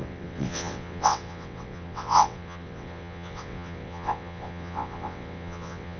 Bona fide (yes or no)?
no